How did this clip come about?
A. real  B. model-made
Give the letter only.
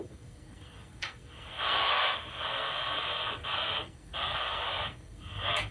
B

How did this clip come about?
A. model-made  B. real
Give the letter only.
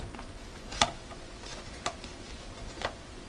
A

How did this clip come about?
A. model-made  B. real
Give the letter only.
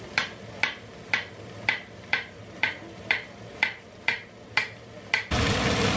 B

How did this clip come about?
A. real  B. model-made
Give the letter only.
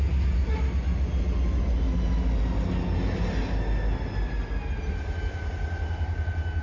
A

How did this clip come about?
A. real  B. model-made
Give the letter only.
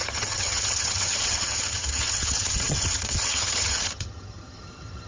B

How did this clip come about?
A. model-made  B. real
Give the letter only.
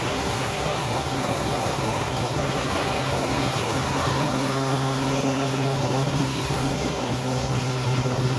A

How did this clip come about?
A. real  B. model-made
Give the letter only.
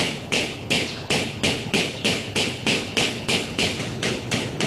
B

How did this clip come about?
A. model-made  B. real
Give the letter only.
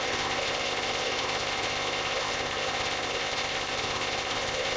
A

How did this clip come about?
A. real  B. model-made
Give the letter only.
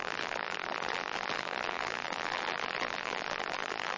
B